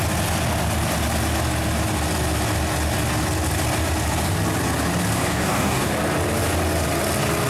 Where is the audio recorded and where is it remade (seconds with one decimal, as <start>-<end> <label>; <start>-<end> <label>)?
0.0-5.2 recorded; 5.2-5.9 remade; 5.9-7.5 recorded